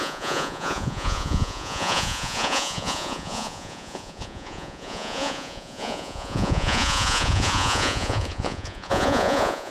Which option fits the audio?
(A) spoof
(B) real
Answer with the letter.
A